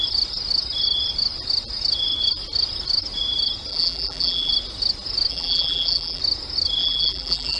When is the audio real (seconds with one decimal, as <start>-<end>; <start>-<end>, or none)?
0.0-3.7; 4.5-5.3; 6.2-6.8